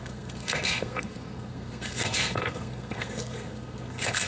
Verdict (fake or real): fake